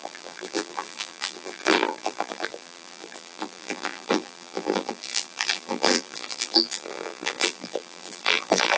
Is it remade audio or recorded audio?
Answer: remade